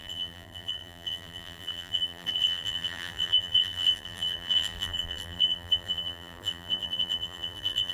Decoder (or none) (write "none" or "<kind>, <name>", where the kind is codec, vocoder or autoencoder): vocoder, BigVGAN v2